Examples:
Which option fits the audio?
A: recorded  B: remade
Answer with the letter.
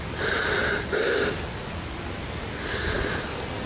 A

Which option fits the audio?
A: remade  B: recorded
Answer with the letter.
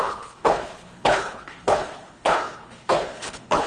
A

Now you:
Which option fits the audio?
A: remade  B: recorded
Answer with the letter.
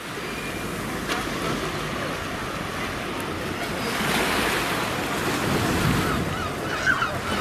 B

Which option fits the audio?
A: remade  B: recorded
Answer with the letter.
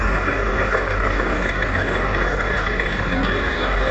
A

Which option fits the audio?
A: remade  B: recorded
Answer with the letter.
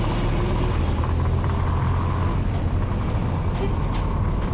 B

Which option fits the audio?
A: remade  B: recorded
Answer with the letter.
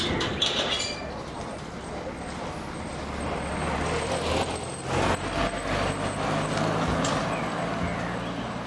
B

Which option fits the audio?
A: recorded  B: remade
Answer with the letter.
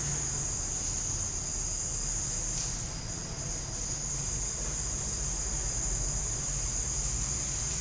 A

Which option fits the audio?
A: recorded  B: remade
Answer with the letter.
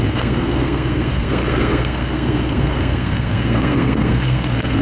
B